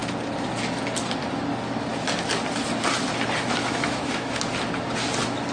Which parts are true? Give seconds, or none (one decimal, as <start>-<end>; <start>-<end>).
0.0-3.6; 4.4-5.5